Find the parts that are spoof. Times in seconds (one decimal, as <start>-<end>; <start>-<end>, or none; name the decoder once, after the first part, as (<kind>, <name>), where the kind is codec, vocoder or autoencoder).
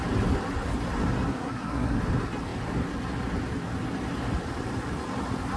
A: 1.3-2.0 (codec, SNAC)